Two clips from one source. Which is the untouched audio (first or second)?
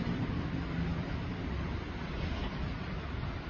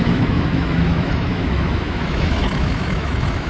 first